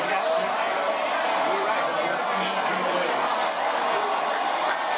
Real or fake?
real